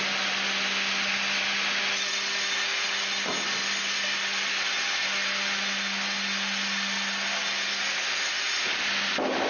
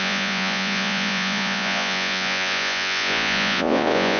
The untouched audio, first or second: first